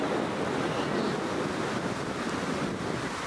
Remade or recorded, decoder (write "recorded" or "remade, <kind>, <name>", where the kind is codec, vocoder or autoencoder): recorded